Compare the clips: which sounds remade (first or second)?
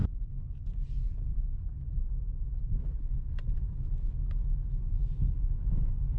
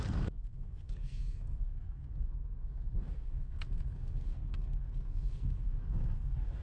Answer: second